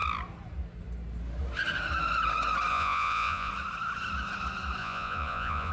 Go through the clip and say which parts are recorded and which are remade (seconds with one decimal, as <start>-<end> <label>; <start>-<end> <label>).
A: 0.0-2.7 recorded; 2.7-3.5 remade; 3.5-4.8 recorded; 4.8-5.7 remade